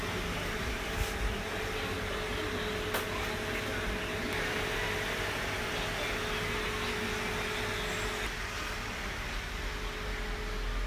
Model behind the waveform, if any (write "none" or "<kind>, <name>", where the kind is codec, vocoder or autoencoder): none